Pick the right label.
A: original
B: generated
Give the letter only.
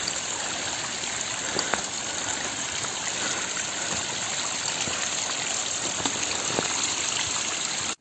B